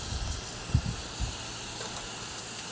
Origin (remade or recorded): recorded